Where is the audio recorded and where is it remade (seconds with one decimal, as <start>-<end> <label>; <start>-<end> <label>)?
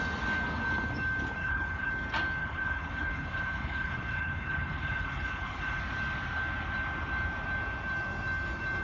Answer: 0.0-1.4 recorded; 1.4-1.9 remade; 1.9-2.4 recorded; 2.4-5.8 remade; 5.8-8.8 recorded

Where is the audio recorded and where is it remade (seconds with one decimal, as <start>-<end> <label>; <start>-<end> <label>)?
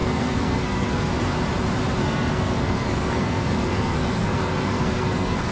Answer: 0.0-1.1 remade; 1.1-2.0 recorded; 2.0-5.5 remade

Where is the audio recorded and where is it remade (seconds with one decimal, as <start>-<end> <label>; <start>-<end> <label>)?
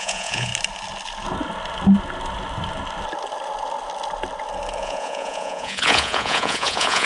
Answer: 0.0-0.5 remade; 0.5-4.8 recorded; 4.8-7.1 remade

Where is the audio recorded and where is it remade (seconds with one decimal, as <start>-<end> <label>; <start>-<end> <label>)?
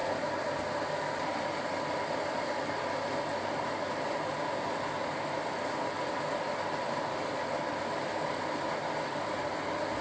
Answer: 0.0-10.0 recorded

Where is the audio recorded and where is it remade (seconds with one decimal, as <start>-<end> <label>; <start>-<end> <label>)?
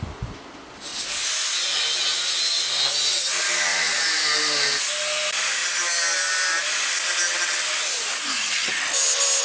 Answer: 0.0-9.4 recorded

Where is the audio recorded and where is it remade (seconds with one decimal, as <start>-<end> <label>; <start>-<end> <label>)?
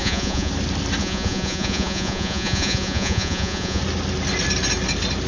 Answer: 0.0-0.5 remade; 0.5-1.0 recorded; 1.0-3.8 remade; 3.8-5.3 recorded